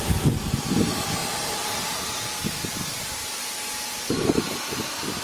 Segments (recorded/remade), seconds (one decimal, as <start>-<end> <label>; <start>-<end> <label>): 0.0-5.2 recorded

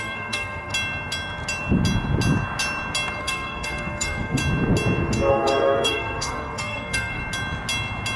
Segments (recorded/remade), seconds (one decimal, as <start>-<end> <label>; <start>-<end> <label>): 0.0-0.7 remade; 0.7-3.2 recorded; 3.2-4.4 remade; 4.4-5.3 recorded; 5.3-7.2 remade; 7.2-8.2 recorded

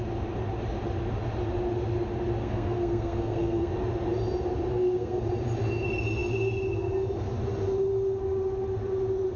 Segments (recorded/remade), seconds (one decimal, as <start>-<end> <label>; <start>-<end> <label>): 0.0-2.4 recorded; 2.4-3.7 remade; 3.7-4.7 recorded; 4.7-5.2 remade; 5.2-9.4 recorded

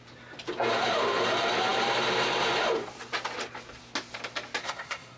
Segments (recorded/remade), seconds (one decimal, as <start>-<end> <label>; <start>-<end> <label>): 0.0-4.6 recorded; 4.6-5.2 remade

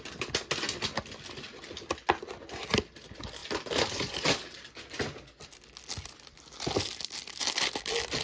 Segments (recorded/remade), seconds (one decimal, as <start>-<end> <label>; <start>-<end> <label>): 0.0-8.2 recorded

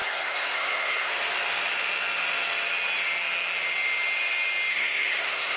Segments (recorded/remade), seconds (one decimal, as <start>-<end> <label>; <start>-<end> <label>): 0.0-1.1 remade; 1.1-4.7 recorded; 4.7-5.6 remade

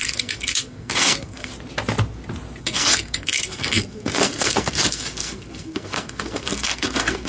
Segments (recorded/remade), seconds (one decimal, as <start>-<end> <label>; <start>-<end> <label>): 0.0-1.5 remade; 1.5-2.6 recorded; 2.6-7.3 remade